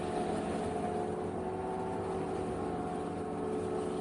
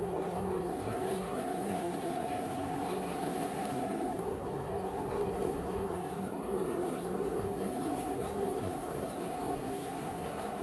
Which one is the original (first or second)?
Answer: first